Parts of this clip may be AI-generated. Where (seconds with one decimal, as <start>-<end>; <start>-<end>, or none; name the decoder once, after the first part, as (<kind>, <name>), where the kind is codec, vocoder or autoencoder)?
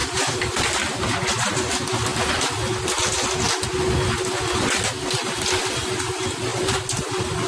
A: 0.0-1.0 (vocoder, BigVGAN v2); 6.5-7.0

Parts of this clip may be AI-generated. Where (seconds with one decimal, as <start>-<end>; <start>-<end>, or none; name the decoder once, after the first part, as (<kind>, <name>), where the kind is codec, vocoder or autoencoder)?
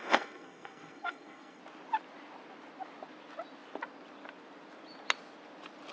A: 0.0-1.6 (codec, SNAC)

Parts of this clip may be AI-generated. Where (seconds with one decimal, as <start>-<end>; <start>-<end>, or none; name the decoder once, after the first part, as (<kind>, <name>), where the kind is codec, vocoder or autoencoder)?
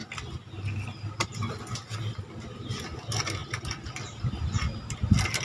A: none